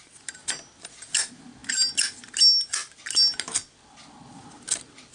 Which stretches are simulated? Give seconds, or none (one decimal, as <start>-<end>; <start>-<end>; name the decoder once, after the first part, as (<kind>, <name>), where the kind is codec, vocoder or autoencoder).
none